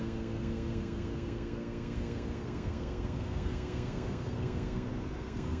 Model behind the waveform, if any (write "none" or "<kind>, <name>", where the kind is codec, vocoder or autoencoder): codec, SNAC